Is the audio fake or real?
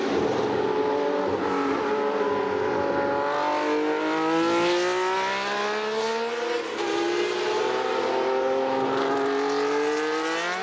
real